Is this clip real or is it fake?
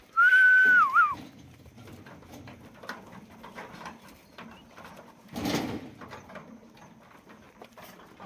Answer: real